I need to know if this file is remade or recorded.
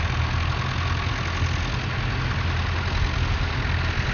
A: recorded